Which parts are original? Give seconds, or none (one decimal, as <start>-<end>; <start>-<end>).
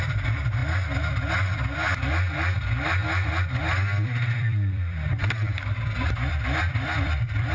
0.6-1.3; 3.0-4.4